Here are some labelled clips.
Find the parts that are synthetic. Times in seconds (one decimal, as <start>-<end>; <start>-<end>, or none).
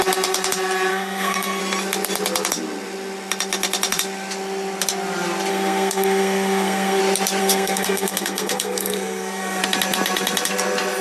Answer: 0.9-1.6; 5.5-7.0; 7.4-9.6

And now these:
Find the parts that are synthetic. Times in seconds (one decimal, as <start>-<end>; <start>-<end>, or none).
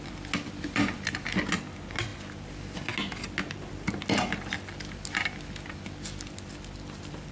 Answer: none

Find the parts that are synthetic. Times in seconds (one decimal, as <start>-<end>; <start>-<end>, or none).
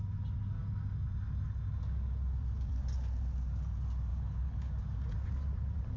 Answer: 4.1-4.7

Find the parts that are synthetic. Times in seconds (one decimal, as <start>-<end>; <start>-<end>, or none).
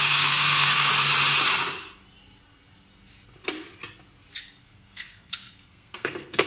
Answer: 0.0-0.9; 4.6-6.5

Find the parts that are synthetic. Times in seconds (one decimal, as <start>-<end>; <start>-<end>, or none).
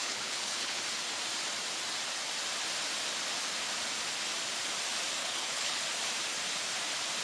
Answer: 0.0-0.8; 5.2-5.8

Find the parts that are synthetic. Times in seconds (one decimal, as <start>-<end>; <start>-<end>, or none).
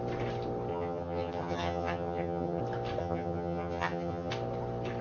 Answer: 0.7-2.6; 3.0-4.3